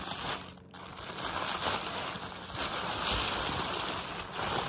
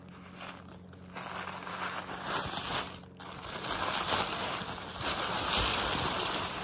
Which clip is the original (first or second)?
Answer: second